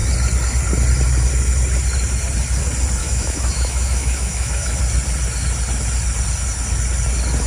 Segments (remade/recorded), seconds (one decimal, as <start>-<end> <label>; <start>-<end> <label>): 0.0-3.0 recorded; 3.0-4.8 remade; 4.8-7.5 recorded